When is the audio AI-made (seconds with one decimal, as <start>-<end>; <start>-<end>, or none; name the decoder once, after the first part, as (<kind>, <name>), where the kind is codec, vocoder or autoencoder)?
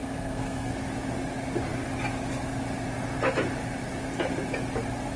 0.0-0.7 (codec, SNAC)